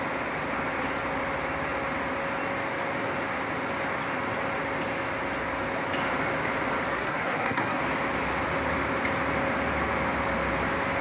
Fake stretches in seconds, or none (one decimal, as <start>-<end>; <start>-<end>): 6.9-7.8